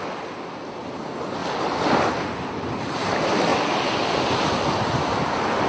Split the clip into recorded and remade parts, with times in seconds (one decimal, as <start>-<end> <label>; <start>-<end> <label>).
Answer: 0.0-5.7 recorded